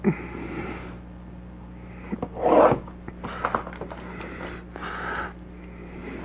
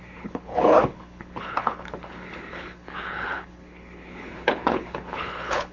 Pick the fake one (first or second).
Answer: second